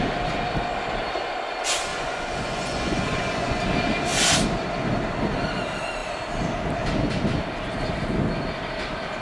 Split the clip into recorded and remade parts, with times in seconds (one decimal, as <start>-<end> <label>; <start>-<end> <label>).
0.0-1.9 recorded; 1.9-3.6 remade; 3.6-9.2 recorded